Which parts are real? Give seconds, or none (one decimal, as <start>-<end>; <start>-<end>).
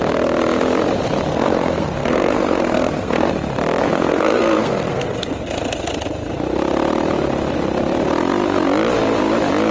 0.0-1.3; 3.3-3.8; 5.3-9.7